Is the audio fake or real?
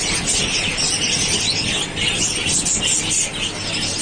real